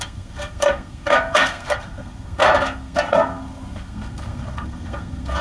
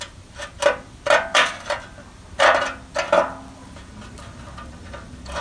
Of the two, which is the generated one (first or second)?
first